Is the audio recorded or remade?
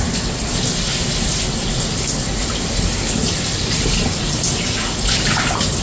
recorded